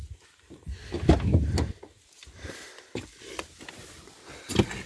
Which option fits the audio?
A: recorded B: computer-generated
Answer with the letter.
A